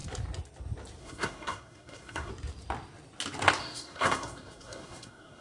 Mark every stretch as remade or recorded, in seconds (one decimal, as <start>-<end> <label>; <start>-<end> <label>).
0.0-1.0 recorded; 1.0-2.3 remade; 2.3-3.6 recorded; 3.6-5.4 remade